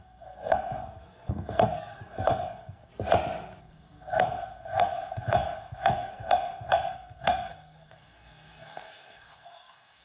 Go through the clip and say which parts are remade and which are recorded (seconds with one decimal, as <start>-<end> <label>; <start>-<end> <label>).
0.0-2.9 remade; 2.9-3.6 recorded; 3.6-10.0 remade